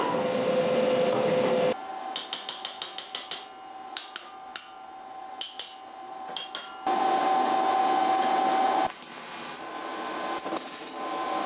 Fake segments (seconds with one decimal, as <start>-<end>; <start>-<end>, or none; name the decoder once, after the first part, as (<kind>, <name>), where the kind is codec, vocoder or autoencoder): none